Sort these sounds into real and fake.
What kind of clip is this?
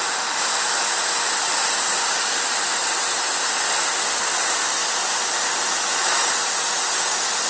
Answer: real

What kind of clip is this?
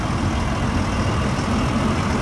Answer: real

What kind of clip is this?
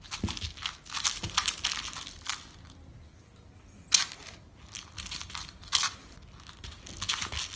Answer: real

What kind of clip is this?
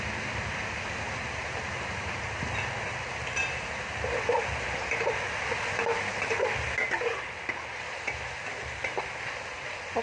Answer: real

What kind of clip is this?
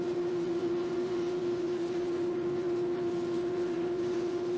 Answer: fake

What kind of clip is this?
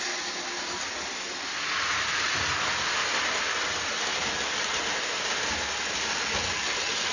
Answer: real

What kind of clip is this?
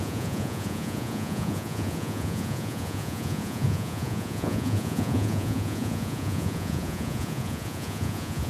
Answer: fake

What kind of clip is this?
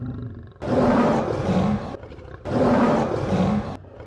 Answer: real